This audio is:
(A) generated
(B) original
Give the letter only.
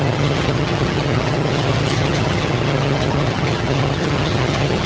A